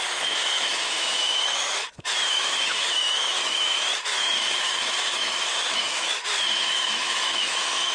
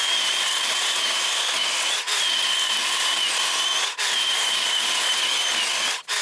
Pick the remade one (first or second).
first